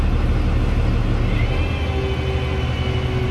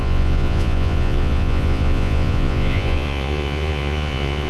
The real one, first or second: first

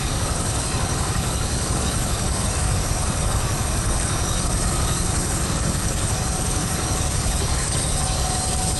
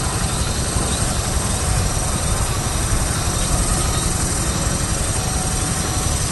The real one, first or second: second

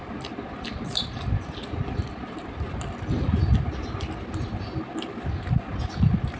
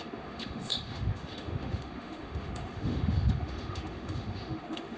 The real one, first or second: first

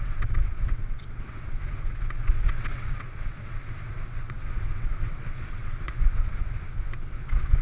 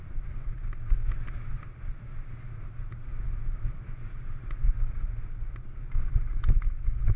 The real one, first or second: second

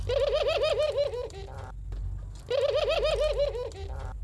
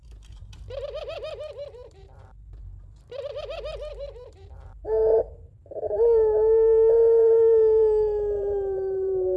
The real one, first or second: first